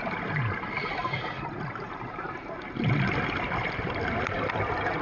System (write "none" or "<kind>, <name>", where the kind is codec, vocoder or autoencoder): none